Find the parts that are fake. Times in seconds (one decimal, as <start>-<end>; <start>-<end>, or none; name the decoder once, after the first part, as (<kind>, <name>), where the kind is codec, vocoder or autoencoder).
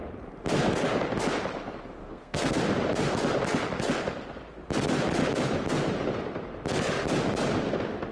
2.0-2.6 (codec, SNAC)